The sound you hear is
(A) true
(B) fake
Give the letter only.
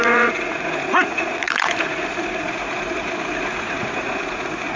B